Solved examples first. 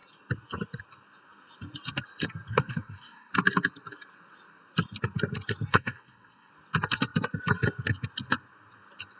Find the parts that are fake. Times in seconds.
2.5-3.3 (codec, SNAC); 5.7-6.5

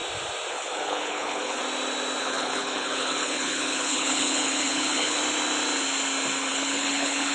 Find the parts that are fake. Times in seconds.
0.5-1.6 (codec, HILCodec); 2.2-5.2; 6.5-7.3

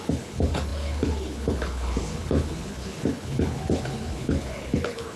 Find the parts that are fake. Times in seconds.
0.0-5.2 (codec, HILCodec)

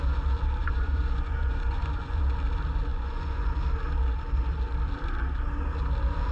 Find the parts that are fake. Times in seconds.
0.6-2.2 (vocoder, Vocos); 2.9-3.5

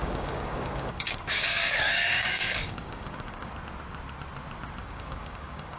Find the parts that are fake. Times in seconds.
0.0-3.5 (codec, DAC); 4.8-5.8

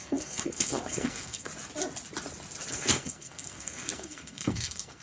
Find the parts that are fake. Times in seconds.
0.0-1.5 (codec, SNAC); 2.7-5.0